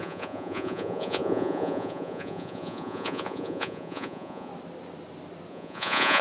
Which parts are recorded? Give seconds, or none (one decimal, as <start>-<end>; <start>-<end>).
4.5-5.5